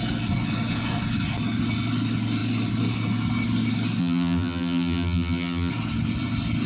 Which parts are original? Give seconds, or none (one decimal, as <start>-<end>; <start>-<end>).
0.0-4.0; 5.7-6.7